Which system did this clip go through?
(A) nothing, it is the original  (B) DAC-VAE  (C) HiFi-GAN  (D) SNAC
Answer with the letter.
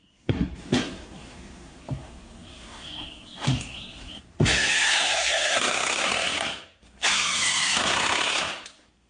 D